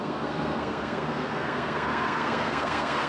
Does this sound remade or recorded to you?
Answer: remade